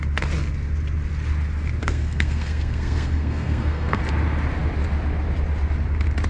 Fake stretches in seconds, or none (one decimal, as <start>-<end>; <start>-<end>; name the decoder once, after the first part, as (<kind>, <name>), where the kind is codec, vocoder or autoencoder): 1.8-4.0 (codec, SNAC)

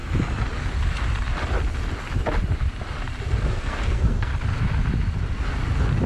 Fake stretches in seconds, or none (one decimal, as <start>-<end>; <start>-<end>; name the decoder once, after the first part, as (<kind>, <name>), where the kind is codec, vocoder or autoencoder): 3.2-4.3 (codec, SNAC)

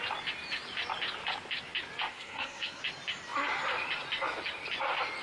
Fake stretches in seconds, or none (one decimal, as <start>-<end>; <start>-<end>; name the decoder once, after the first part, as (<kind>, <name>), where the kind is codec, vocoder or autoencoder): 2.1-2.8 (codec, SNAC)

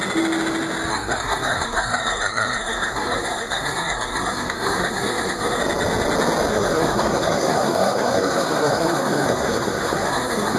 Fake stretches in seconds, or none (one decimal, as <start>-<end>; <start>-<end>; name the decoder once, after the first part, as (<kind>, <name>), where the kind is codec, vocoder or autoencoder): 0.9-5.6 (codec, SNAC); 6.5-10.6

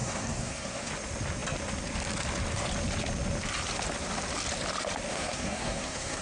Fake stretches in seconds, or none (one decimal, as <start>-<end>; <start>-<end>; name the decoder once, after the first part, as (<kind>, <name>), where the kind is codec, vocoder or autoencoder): 0.0-0.9 (codec, SNAC); 5.1-6.2

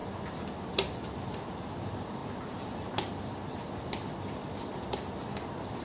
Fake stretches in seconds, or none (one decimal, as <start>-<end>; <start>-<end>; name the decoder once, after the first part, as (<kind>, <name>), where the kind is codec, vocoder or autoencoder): none

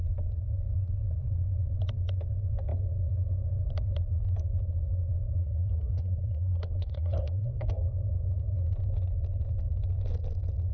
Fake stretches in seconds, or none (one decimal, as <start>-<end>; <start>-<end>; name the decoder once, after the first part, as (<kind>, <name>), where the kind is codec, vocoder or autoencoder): 5.4-7.7 (codec, SNAC)